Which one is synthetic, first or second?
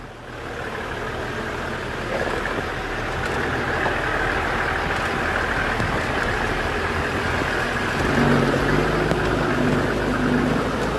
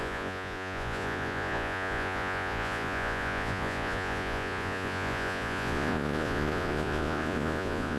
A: second